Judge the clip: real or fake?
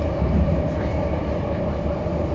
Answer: real